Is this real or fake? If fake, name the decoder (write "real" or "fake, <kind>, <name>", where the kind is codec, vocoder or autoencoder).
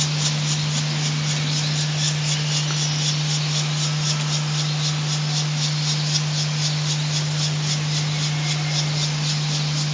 real